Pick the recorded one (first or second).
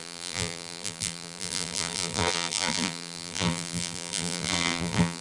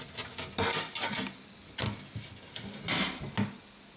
second